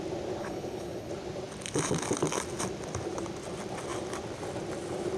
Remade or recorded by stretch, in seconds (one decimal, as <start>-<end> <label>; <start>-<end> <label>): 0.0-0.4 recorded; 0.4-1.1 remade; 1.1-5.2 recorded